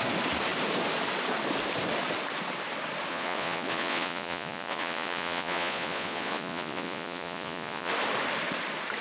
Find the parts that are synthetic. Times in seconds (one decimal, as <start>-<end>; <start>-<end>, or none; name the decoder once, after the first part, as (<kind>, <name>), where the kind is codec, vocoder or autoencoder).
3.1-7.9 (vocoder, Vocos)